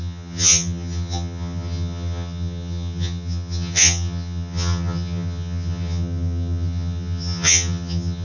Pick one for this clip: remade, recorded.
remade